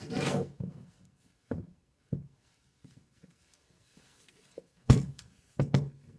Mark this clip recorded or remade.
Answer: remade